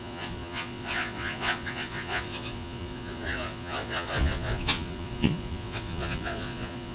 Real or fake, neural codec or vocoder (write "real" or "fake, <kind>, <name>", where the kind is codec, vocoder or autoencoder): fake, vocoder, Vocos